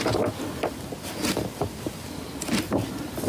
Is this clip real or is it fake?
real